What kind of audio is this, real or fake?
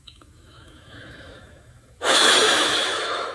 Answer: fake